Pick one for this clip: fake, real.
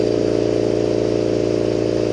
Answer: real